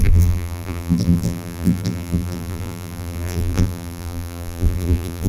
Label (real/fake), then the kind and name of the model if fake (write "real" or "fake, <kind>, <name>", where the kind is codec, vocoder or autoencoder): fake, vocoder, BigVGAN v2